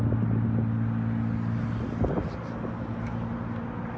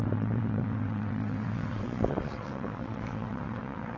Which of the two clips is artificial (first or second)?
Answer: second